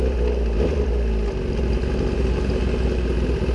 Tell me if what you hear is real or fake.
real